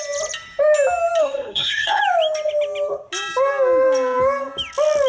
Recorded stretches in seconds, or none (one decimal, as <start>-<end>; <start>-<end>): 0.0-1.2; 2.0-5.1